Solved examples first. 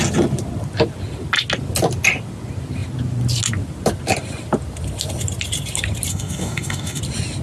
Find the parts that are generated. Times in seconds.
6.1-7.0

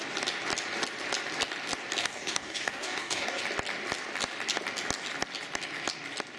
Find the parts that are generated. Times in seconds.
2.0-3.4

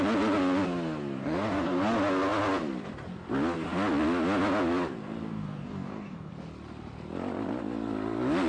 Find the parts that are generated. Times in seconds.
1.2-1.8; 5.3-6.3